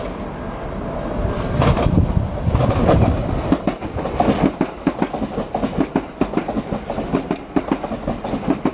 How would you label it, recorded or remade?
recorded